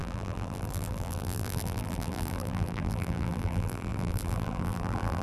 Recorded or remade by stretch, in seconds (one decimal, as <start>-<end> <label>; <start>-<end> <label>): 0.0-5.2 remade